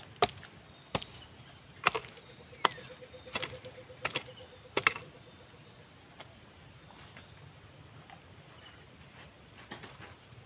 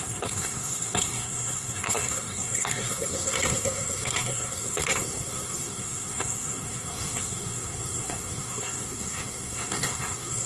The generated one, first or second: second